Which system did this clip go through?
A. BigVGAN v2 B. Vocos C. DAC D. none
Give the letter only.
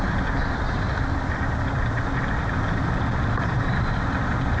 D